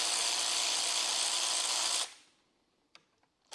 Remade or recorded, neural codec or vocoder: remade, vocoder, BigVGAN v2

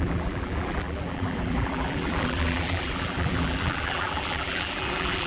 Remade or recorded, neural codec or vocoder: remade, vocoder, BigVGAN v2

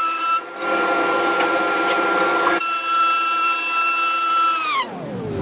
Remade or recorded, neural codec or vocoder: remade, vocoder, BigVGAN v2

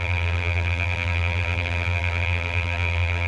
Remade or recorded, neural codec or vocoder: remade, vocoder, BigVGAN v2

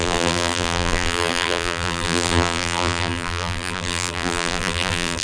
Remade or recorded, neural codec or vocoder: remade, vocoder, BigVGAN v2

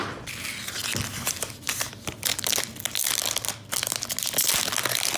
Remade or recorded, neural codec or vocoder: recorded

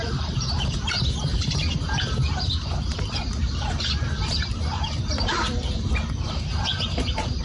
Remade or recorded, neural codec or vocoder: remade, vocoder, BigVGAN v2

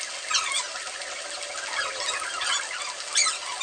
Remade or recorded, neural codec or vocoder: recorded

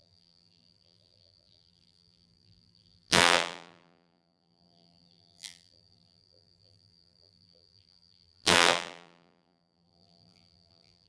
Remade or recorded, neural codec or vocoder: remade, vocoder, BigVGAN v2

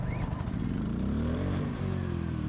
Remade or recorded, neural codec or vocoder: remade, vocoder, BigVGAN v2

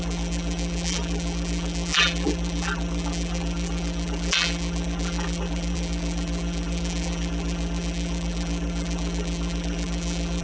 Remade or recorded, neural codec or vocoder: remade, vocoder, BigVGAN v2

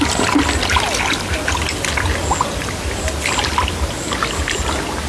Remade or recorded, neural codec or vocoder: recorded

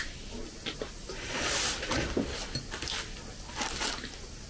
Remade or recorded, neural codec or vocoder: recorded